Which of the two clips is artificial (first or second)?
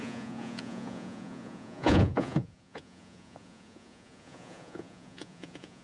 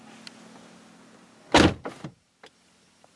first